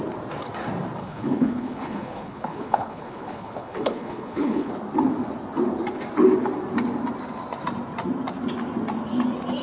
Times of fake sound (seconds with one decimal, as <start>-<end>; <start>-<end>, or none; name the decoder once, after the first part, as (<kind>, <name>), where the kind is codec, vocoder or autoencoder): 1.0-4.7 (codec, HILCodec)